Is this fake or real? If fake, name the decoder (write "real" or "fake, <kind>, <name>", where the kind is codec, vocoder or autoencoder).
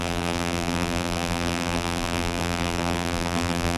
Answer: fake, vocoder, BigVGAN v2